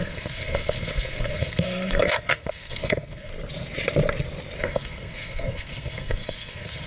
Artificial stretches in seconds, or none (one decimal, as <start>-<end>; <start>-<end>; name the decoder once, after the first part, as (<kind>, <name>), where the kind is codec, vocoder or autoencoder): 0.0-3.3 (codec, SNAC); 4.6-6.9